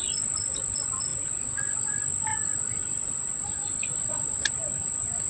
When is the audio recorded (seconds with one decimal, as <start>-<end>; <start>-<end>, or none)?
0.0-5.3